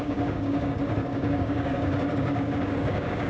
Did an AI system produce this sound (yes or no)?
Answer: yes